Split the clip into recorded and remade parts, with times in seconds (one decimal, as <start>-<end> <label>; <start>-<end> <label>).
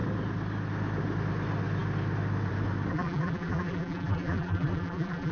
0.0-2.9 recorded; 2.9-5.3 remade